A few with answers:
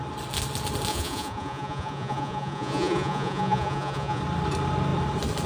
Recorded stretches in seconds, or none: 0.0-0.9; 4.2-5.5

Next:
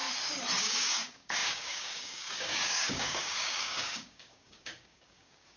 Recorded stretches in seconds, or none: 0.0-0.6

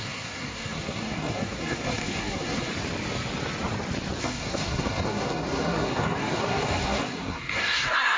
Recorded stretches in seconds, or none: 2.7-4.2

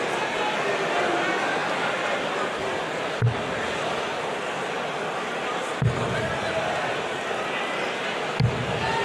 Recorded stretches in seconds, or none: 0.0-9.0